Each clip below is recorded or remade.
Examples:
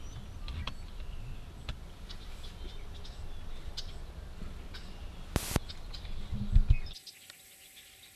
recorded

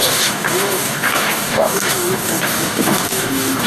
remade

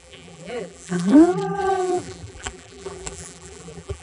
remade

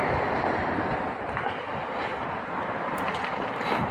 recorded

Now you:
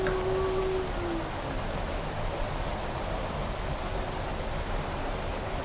recorded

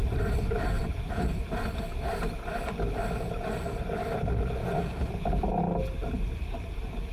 recorded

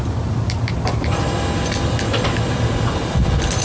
recorded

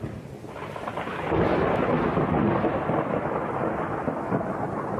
recorded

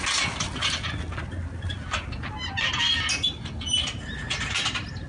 recorded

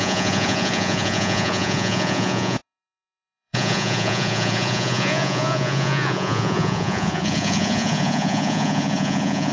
remade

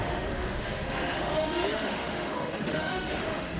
remade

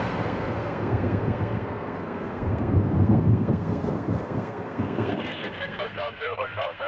remade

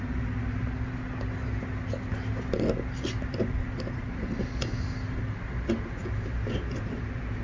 recorded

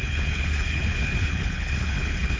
remade